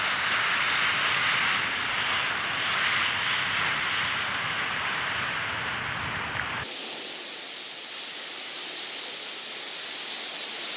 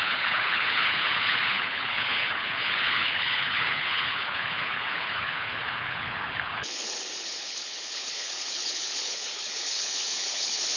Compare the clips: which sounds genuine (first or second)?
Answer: first